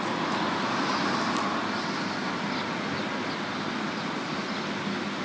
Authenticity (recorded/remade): recorded